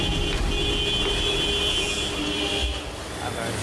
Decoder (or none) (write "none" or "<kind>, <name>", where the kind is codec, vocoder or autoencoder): none